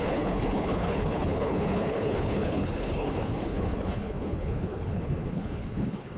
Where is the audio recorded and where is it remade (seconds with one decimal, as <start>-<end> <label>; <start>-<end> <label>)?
0.0-6.2 remade

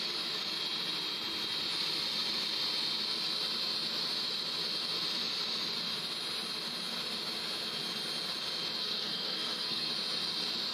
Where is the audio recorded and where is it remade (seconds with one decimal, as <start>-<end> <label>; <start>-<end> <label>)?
0.0-8.8 recorded; 8.8-9.9 remade; 9.9-10.7 recorded

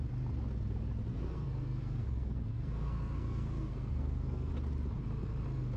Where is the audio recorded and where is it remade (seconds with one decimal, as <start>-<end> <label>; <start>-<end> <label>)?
0.0-1.1 recorded; 1.1-4.5 remade; 4.5-5.8 recorded

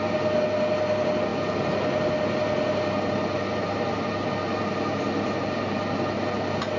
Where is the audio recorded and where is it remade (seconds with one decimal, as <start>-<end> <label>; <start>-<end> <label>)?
0.0-6.8 recorded

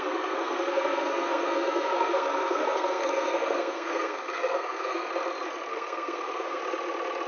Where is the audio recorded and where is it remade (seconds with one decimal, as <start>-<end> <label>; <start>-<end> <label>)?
0.0-5.1 remade; 5.1-5.7 recorded; 5.7-6.6 remade; 6.6-7.3 recorded

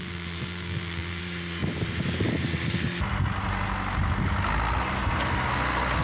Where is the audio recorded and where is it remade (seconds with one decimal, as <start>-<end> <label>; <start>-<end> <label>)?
0.0-1.2 remade; 1.2-6.0 recorded

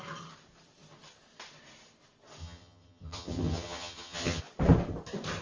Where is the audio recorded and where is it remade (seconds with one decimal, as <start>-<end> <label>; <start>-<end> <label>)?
0.0-2.4 recorded; 2.4-4.4 remade; 4.4-5.4 recorded

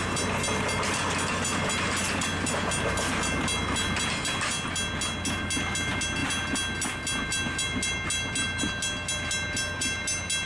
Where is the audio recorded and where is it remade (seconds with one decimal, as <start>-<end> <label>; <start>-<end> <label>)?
0.0-10.5 recorded